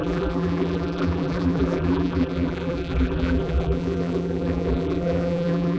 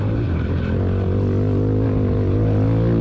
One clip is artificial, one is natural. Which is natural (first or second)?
second